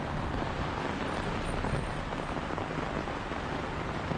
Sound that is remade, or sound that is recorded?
recorded